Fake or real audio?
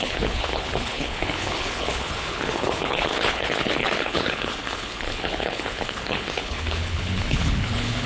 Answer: fake